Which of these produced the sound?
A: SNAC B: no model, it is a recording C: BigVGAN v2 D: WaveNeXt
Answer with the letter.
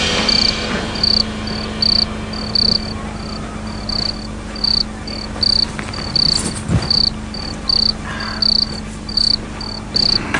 B